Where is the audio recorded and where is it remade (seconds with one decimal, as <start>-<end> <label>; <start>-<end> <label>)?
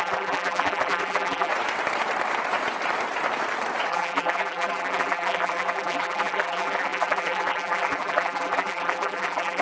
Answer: 0.0-1.5 remade; 1.5-3.9 recorded; 3.9-9.6 remade